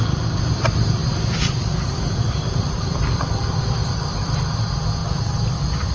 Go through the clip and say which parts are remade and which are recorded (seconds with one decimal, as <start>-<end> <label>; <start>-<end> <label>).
0.0-1.0 recorded; 1.0-4.5 remade; 4.5-5.0 recorded; 5.0-5.9 remade